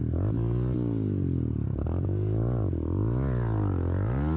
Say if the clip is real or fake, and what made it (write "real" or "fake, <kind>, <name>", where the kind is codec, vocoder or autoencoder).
real